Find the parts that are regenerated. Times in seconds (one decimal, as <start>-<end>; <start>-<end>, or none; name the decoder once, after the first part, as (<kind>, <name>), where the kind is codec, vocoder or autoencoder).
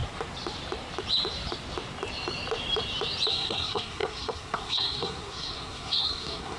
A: 3.3-6.6 (codec, SNAC)